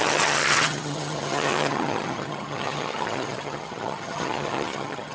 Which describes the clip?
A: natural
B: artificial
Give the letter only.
B